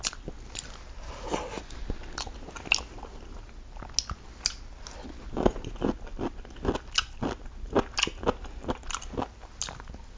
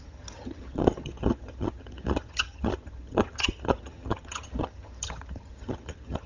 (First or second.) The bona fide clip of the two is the first